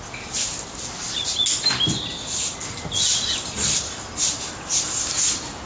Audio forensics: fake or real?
real